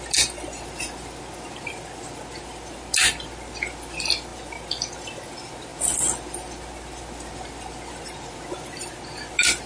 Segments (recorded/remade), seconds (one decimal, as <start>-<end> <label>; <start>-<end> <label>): 0.0-9.7 recorded